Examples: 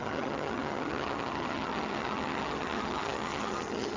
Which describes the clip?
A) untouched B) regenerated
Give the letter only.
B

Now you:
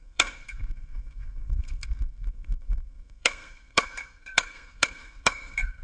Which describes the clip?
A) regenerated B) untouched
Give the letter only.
A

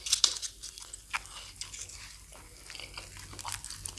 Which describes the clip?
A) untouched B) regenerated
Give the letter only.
A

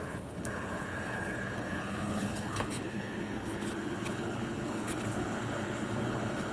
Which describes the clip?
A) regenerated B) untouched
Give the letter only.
A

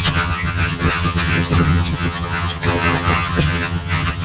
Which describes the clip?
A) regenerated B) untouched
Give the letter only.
A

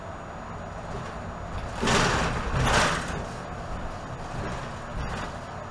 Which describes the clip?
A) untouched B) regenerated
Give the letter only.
A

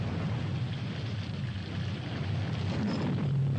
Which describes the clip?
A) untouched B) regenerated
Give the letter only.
A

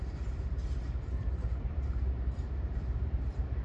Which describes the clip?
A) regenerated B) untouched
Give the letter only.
A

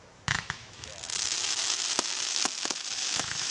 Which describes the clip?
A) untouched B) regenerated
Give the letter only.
B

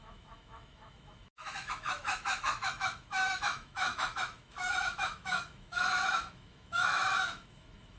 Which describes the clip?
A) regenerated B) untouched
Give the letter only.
A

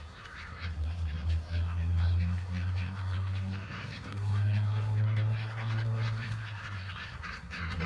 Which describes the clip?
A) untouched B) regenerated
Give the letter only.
B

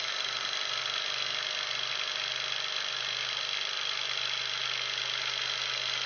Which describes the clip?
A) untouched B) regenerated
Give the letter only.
A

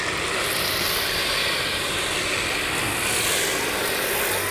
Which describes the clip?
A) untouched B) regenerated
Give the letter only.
A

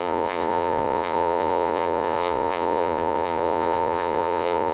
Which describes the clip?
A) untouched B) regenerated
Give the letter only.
B